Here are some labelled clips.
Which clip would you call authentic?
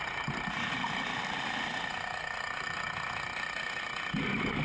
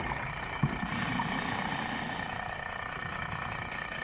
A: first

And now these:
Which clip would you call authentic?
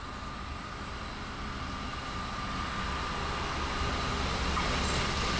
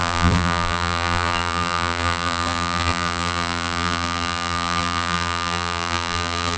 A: first